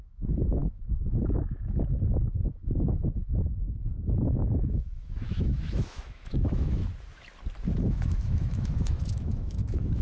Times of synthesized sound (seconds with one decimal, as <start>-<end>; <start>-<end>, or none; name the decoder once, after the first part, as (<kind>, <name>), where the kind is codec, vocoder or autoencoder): 0.0-6.8 (autoencoder, DAC-VAE); 7.8-10.0